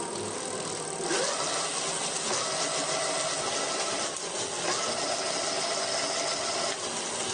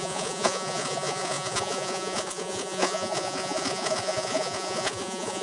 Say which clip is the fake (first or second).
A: second